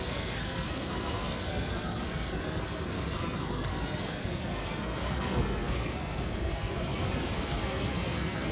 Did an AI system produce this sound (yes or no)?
yes